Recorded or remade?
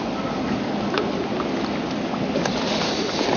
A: recorded